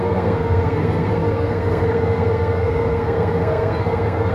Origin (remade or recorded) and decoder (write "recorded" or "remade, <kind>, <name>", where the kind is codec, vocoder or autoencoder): remade, codec, SNAC